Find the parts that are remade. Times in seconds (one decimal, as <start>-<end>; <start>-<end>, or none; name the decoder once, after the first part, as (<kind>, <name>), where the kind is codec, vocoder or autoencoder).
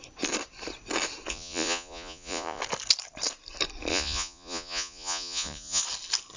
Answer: 1.3-2.6 (vocoder, Vocos); 3.9-5.8